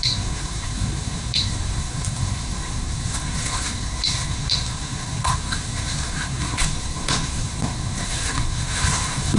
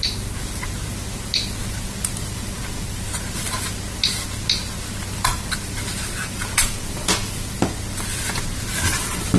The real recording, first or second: second